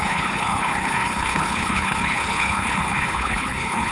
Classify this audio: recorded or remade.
remade